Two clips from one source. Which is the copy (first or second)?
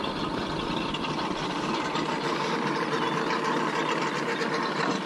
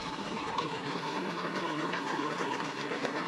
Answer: second